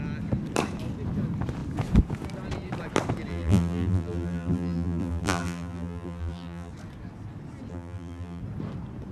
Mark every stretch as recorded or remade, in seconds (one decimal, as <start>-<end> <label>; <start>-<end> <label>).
0.0-3.3 recorded; 3.3-6.7 remade; 6.7-7.7 recorded; 7.7-8.4 remade; 8.4-9.1 recorded